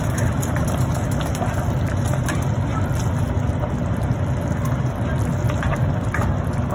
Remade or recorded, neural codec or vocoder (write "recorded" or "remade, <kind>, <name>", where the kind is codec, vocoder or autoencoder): recorded